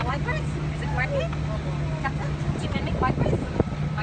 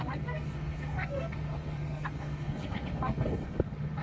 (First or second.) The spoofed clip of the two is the second